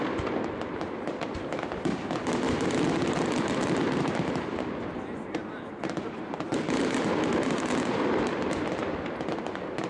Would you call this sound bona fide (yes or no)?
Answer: yes